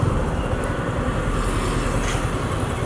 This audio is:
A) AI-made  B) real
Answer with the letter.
B